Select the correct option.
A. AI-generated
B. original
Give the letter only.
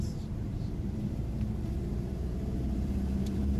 A